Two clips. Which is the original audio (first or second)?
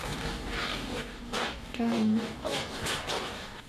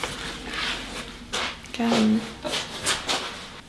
second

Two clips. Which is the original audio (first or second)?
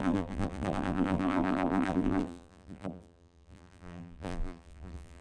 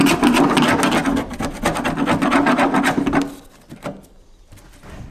second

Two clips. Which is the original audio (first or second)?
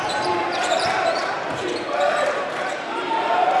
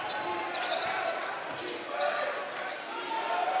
second